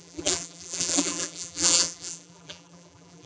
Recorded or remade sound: remade